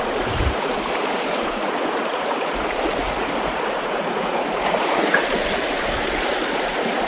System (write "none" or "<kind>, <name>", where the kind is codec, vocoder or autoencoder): vocoder, Vocos